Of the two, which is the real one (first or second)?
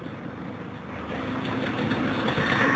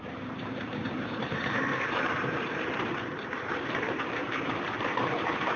first